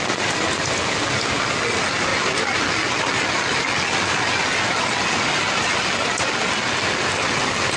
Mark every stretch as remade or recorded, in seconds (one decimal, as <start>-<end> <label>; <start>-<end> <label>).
0.0-7.8 recorded